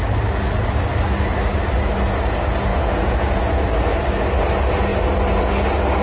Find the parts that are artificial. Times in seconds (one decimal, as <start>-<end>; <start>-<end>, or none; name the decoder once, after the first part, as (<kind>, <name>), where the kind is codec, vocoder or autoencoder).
2.7-3.4 (vocoder, Vocos)